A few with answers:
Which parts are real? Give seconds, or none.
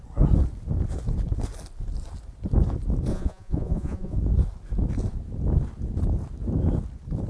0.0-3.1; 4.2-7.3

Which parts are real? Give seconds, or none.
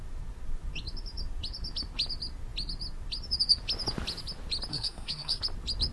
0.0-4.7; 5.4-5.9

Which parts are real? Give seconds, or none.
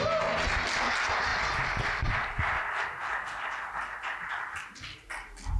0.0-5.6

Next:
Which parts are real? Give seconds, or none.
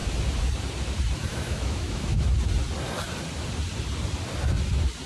0.0-1.3; 2.2-5.1